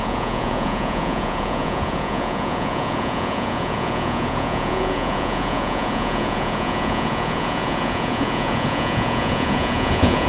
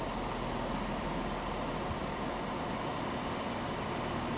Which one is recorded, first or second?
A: second